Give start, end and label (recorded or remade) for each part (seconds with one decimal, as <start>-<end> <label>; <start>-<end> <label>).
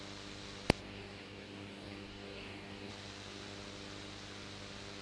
0.0-0.8 recorded; 0.8-2.9 remade; 2.9-5.0 recorded